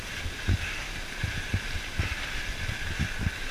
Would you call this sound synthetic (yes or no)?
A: no